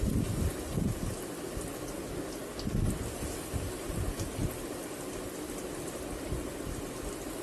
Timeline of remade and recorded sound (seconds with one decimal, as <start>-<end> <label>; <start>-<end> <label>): 0.0-7.4 recorded